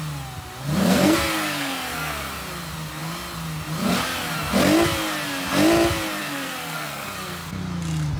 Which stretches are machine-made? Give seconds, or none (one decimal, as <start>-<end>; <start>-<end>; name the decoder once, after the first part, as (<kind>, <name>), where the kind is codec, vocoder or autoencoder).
0.8-2.3 (codec, SNAC); 6.2-7.6